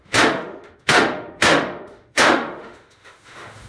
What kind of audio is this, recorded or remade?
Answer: remade